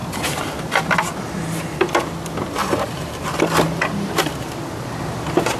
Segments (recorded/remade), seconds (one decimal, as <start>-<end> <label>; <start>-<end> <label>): 0.0-2.6 recorded; 2.6-3.2 remade; 3.2-5.6 recorded